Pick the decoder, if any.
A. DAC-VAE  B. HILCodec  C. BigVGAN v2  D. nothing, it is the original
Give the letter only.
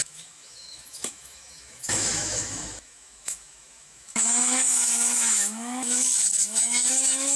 A